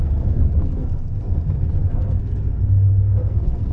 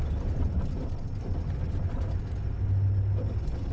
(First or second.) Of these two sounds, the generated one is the first